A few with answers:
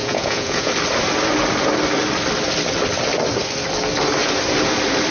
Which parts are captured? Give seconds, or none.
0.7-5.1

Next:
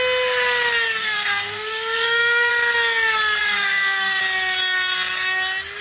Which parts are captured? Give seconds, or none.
0.0-1.0; 2.5-3.4; 4.2-5.8

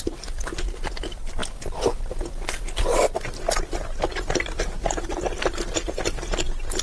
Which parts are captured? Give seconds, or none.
0.0-6.8